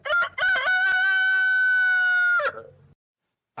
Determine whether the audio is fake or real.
real